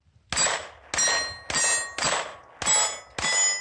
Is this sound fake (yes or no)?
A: no